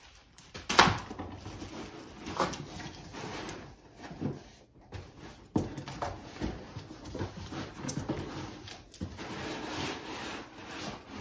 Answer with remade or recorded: recorded